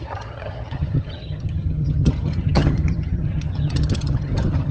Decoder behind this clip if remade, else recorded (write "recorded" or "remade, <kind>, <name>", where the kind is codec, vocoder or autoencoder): remade, vocoder, HiFi-GAN